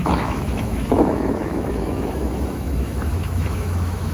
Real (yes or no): no